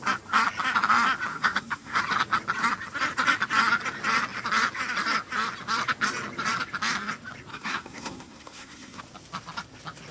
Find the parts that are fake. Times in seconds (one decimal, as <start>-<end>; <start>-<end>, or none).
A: 1.3-2.0; 7.5-9.0